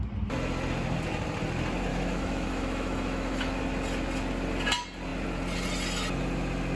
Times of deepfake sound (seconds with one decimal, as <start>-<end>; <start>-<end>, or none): 1.9-3.6